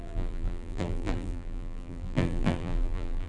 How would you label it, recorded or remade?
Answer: remade